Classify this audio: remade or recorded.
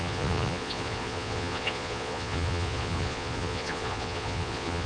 remade